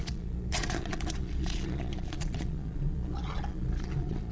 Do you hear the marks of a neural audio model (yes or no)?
yes